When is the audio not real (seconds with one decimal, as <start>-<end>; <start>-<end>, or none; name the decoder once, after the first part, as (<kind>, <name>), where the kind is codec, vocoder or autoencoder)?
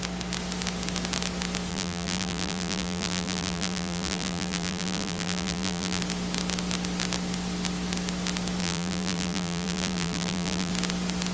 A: 1.7-6.0 (vocoder, BigVGAN v2); 8.6-10.7